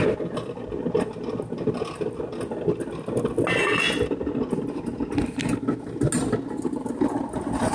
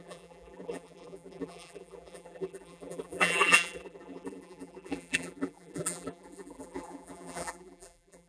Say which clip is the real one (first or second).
first